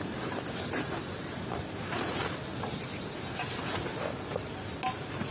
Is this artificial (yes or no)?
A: no